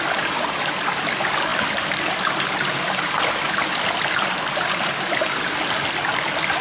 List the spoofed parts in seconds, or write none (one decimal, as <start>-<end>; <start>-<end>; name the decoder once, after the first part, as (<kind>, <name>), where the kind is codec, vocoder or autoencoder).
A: none